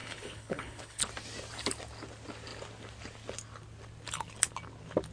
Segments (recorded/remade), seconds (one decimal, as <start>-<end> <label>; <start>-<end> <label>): 0.0-1.0 remade; 1.0-5.1 recorded